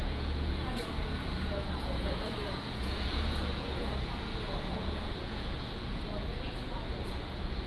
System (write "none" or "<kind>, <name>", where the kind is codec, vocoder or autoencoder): vocoder, Vocos